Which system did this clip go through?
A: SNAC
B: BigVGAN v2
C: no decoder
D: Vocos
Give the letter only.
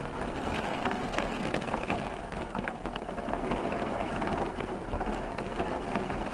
A